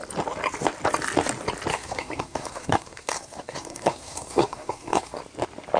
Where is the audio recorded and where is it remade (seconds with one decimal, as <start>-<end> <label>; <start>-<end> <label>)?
0.0-1.7 recorded; 1.7-5.2 remade; 5.2-5.8 recorded